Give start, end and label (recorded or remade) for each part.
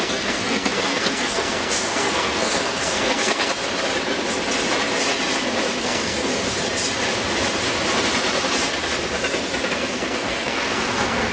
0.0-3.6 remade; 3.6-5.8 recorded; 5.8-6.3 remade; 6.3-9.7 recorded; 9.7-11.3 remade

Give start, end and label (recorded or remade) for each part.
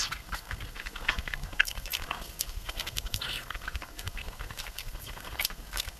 0.0-6.0 remade